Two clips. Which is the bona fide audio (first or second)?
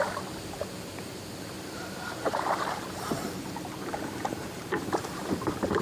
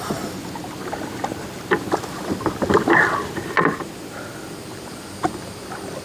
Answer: second